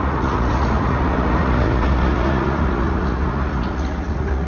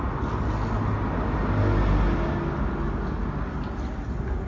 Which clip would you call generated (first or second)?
first